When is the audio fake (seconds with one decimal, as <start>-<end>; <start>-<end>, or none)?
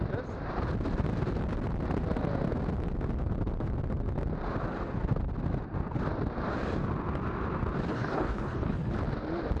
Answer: 7.9-8.9